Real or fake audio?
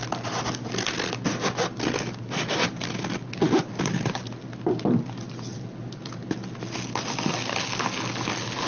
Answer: real